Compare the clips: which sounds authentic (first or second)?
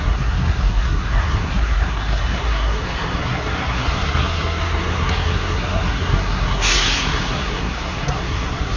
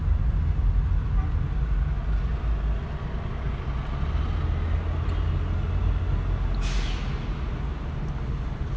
second